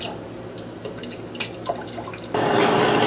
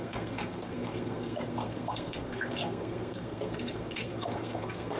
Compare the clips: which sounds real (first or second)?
first